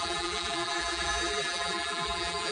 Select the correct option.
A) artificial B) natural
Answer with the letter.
A